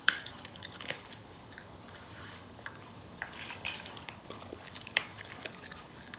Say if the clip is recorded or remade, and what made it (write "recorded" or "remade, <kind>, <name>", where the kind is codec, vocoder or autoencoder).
remade, codec, DAC